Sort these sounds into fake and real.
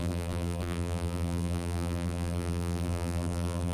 fake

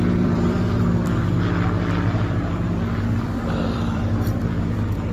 fake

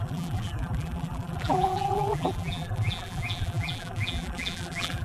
fake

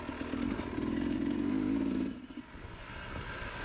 real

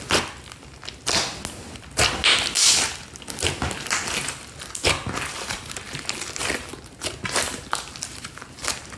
real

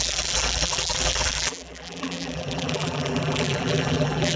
fake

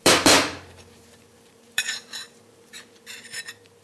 fake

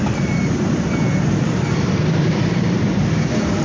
fake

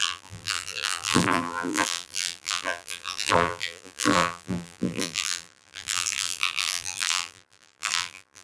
fake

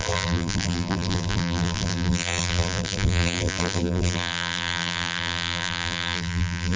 fake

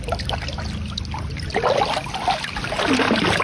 real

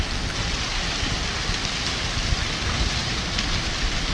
real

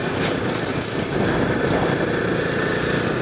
real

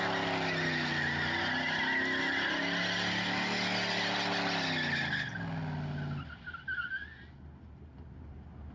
real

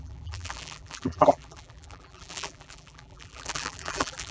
fake